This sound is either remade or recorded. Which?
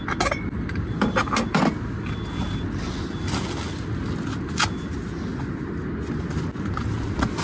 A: recorded